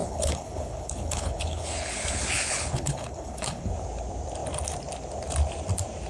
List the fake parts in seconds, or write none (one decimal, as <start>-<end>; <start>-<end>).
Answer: 0.0-3.7